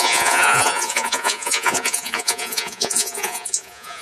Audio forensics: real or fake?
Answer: fake